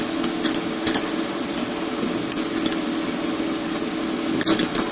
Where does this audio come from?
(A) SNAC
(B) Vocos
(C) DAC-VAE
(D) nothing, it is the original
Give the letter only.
D